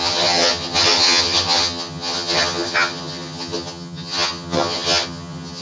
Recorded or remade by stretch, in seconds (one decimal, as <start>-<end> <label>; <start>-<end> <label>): 0.0-5.6 remade